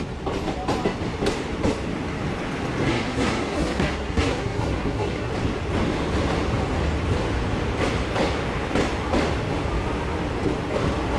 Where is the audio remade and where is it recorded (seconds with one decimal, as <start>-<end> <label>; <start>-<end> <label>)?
0.0-2.8 recorded; 2.8-5.3 remade; 5.3-11.2 recorded